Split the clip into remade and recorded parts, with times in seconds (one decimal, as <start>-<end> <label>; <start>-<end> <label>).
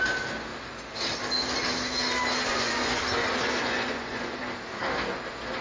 0.0-2.5 recorded; 2.5-3.0 remade; 3.0-3.6 recorded; 3.6-4.4 remade; 4.4-5.6 recorded